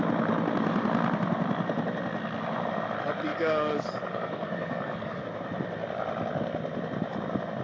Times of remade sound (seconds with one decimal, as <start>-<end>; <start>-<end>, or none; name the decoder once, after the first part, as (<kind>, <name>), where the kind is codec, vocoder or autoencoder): 3.3-5.2 (codec, DAC)